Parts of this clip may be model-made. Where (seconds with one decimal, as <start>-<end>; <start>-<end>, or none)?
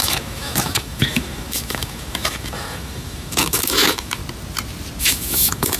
0.0-4.2; 5.0-5.8